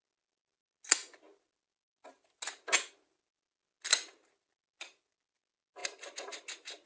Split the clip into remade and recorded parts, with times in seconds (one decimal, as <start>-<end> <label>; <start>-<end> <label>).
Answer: 0.0-6.9 recorded